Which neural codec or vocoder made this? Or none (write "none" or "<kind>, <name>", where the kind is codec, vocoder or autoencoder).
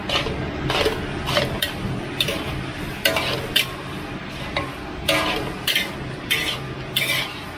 none